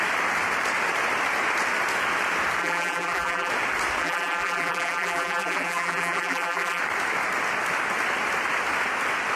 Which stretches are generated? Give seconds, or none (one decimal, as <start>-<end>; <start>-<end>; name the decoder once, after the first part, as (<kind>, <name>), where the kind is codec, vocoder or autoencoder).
2.6-3.5 (vocoder, BigVGAN v2); 4.0-6.8

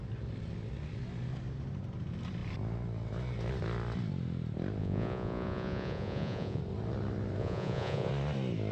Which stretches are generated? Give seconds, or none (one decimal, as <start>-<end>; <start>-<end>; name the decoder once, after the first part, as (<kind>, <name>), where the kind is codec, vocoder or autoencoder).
4.8-6.6 (vocoder, Vocos); 7.4-8.1

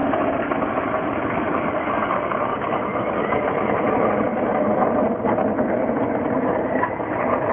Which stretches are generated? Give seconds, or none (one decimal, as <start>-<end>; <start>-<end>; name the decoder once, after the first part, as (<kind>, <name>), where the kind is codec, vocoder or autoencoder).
0.0-1.2 (vocoder, BigVGAN v2)

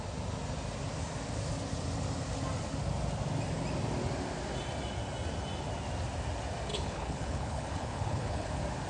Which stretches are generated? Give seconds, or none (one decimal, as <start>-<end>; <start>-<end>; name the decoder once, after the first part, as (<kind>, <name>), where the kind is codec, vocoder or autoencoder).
6.7-8.5 (codec, HILCodec)

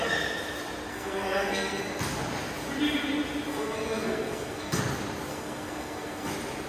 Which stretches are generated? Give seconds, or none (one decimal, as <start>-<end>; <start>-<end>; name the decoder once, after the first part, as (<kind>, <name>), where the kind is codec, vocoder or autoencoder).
0.9-1.8 (codec, SNAC); 3.5-4.8; 5.3-6.3

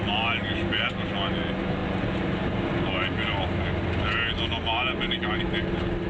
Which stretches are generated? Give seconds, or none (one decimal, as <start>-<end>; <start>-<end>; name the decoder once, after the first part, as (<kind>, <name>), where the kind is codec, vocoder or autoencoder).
none

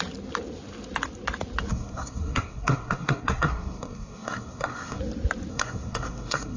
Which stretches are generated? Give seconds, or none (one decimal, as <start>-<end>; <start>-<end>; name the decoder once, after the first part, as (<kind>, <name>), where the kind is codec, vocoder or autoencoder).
1.7-5.0 (codec, SNAC); 5.5-6.6